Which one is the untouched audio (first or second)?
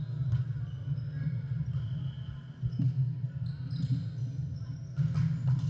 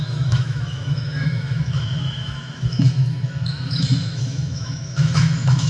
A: first